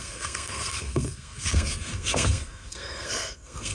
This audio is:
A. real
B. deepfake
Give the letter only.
B